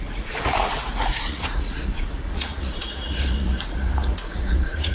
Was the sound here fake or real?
fake